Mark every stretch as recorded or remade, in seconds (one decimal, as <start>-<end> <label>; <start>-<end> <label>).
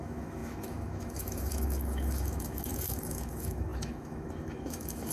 0.0-5.1 remade